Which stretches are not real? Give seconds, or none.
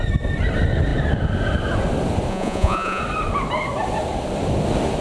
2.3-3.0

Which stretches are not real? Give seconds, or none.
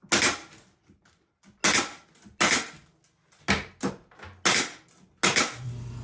none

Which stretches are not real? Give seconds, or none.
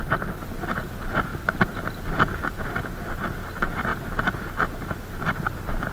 none